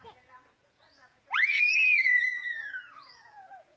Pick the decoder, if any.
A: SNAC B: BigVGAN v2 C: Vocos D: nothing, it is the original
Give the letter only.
C